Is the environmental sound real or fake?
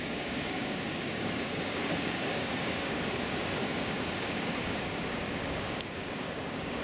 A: fake